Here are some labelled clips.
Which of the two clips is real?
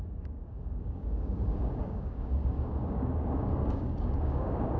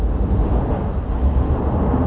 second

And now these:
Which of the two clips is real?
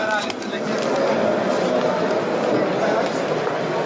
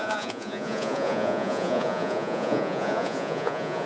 first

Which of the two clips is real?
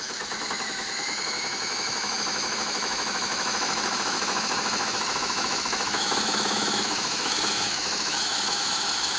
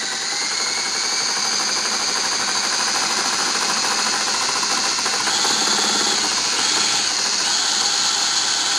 second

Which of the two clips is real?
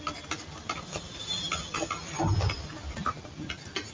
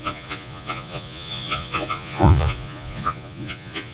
first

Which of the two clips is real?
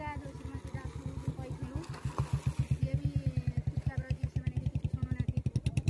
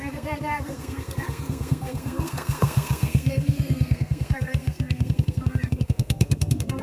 first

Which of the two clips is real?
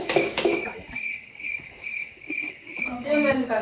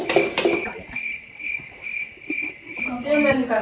second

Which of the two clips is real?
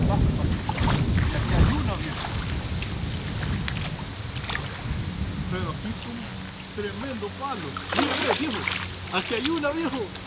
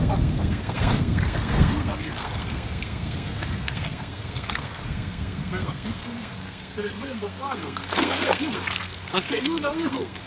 first